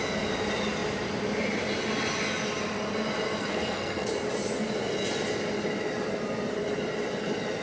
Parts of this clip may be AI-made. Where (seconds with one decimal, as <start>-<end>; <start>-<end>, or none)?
3.4-4.1